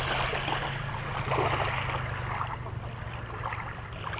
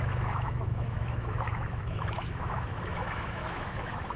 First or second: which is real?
first